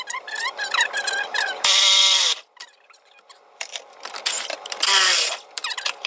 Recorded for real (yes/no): no